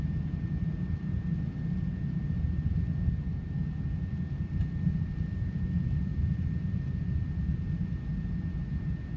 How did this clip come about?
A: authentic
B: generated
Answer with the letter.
A